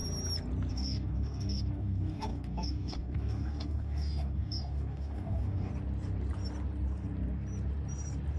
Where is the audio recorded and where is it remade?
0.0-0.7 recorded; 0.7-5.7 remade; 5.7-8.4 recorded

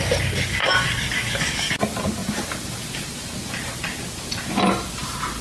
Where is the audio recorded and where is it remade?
0.0-0.6 recorded; 0.6-1.8 remade; 1.8-5.4 recorded

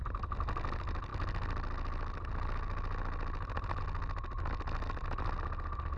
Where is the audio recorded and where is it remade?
0.0-6.0 recorded

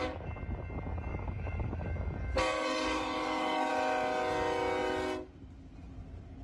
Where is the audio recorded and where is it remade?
0.0-1.1 recorded; 1.1-3.7 remade; 3.7-6.4 recorded

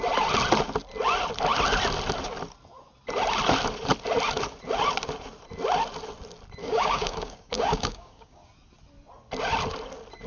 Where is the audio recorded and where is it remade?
0.0-6.6 recorded; 6.6-8.5 remade; 8.5-10.3 recorded

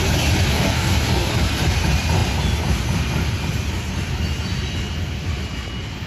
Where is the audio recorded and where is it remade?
0.0-0.5 recorded; 0.5-1.3 remade; 1.3-6.1 recorded

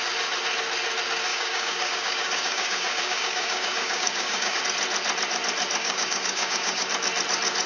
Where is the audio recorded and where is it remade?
0.0-1.3 recorded; 1.3-4.6 remade; 4.6-5.8 recorded; 5.8-6.9 remade; 6.9-7.7 recorded

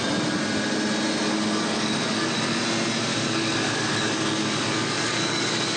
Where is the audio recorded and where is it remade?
0.0-1.3 recorded; 1.3-2.6 remade; 2.6-3.1 recorded; 3.1-5.8 remade